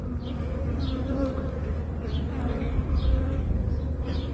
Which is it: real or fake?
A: fake